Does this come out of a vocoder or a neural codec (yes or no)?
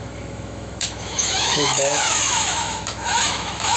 yes